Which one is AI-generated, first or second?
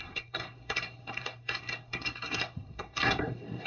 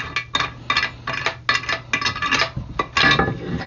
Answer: first